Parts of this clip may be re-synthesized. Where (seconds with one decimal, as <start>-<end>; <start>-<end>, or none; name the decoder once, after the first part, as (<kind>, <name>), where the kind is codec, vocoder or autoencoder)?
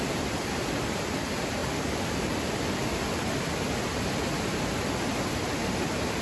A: none